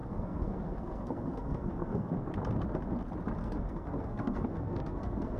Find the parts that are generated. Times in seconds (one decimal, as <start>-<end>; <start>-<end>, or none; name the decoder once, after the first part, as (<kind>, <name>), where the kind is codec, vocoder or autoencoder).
0.0-2.3 (codec, SNAC); 3.4-5.4